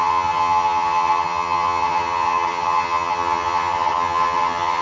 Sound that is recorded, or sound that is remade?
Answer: remade